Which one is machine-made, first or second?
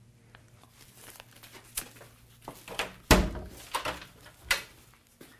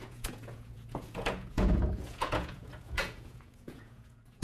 second